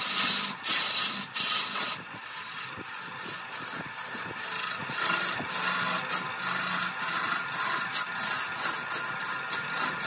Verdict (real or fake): real